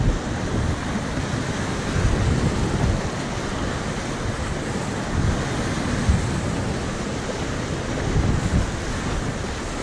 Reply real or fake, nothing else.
real